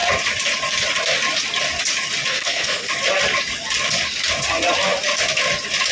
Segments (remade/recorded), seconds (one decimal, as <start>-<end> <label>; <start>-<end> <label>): 0.0-2.3 recorded; 2.3-2.9 remade; 2.9-5.9 recorded